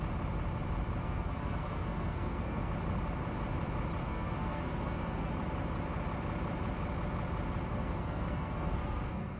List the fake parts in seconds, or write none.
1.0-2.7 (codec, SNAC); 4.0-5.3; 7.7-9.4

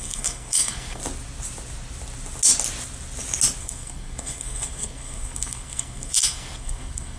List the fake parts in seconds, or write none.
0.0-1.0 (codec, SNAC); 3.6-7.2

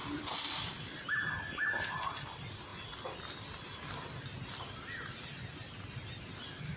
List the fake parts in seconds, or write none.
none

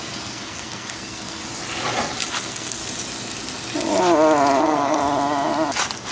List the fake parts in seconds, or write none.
0.0-1.4 (codec, SNAC); 2.3-2.8; 4.6-5.0

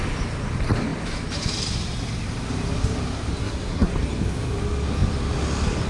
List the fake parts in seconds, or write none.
3.4-3.9 (codec, SNAC)